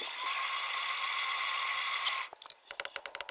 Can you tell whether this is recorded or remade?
recorded